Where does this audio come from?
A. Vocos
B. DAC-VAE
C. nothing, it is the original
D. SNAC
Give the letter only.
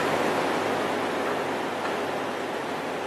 C